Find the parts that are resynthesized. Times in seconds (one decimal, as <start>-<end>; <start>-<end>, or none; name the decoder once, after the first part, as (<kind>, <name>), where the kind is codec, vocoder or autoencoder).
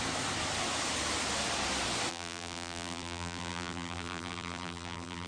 2.1-5.3 (vocoder, BigVGAN v2)